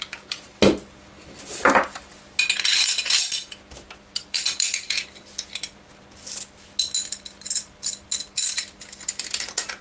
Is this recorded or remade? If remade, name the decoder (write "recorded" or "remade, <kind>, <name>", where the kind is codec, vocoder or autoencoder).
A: recorded